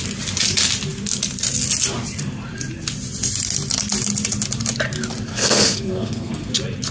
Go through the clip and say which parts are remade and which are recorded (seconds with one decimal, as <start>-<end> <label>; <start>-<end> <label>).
0.0-5.3 recorded; 5.3-6.5 remade; 6.5-6.9 recorded